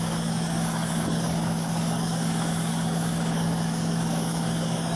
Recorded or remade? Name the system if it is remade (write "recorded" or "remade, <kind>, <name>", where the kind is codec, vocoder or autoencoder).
remade, codec, DAC